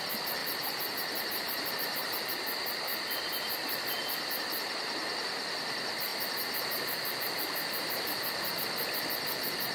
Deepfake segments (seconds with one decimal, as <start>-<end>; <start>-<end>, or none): 0.4-1.7; 2.9-3.5; 6.1-8.5